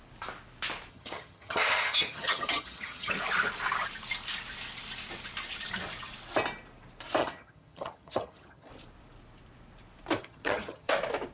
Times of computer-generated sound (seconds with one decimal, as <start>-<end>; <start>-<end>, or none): 0.9-3.1; 7.2-8.7; 10.2-10.9